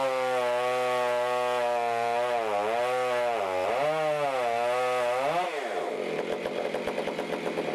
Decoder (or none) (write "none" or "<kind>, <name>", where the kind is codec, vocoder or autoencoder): none